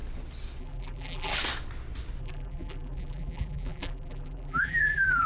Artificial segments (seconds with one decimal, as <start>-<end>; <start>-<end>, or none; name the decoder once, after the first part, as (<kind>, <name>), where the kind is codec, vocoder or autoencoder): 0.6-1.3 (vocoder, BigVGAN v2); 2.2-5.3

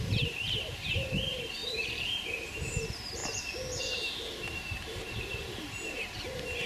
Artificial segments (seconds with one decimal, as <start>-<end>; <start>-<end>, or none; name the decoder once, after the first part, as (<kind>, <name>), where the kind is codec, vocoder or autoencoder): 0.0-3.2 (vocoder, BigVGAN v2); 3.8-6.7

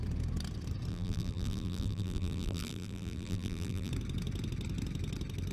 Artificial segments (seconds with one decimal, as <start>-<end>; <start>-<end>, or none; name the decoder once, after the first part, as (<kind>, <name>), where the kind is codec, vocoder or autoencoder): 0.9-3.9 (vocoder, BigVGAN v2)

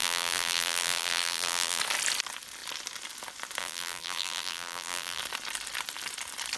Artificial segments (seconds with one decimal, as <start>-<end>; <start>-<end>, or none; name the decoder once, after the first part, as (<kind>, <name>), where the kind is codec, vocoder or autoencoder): 0.0-1.8 (vocoder, BigVGAN v2); 3.6-5.2